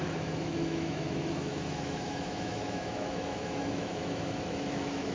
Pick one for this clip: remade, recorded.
remade